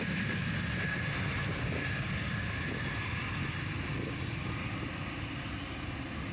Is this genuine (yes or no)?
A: yes